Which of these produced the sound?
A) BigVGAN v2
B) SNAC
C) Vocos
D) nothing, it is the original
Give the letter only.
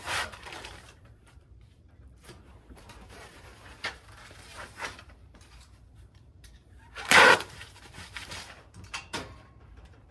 A